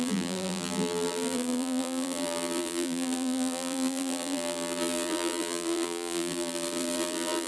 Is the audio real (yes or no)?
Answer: no